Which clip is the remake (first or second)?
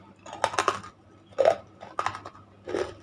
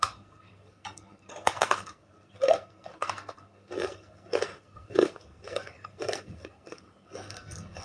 second